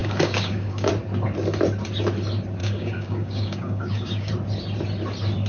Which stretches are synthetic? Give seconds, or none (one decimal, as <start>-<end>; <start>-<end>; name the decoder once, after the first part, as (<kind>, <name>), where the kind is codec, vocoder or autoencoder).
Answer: 0.0-0.9 (codec, DAC); 2.6-4.3